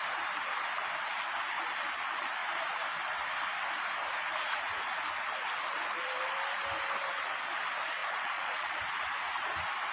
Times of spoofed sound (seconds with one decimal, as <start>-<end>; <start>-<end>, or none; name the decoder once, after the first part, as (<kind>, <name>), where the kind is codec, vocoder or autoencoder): 8.0-8.8 (vocoder, Vocos)